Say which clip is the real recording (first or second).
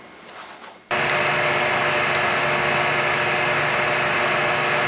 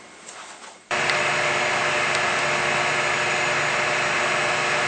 first